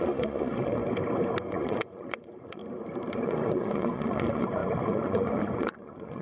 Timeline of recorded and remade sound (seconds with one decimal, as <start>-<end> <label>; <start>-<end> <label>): 0.0-0.8 remade; 0.8-1.5 recorded; 1.5-2.6 remade; 2.6-3.1 recorded; 3.1-6.2 remade